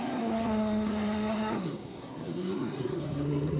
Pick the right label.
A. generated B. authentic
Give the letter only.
A